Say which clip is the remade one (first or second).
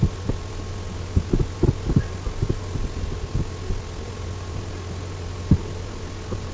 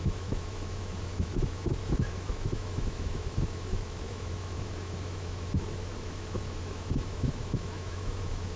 second